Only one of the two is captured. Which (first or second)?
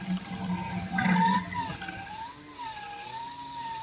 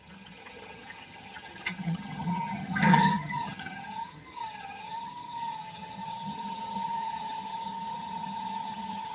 first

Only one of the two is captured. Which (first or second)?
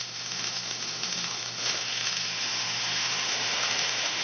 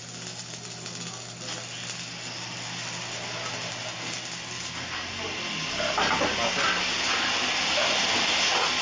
second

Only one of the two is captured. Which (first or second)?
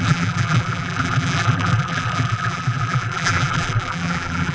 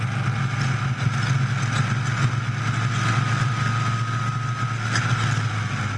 second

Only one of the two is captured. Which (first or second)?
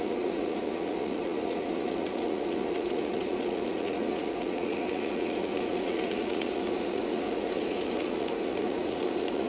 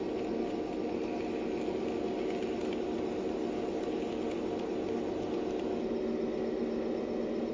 second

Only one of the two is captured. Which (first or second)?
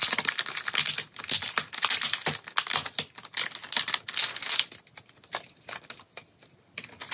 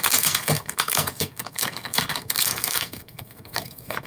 first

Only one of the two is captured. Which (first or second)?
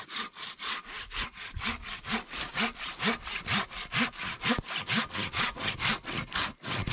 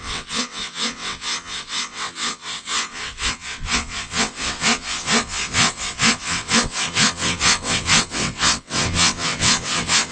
first